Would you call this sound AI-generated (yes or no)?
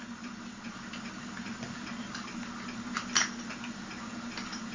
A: no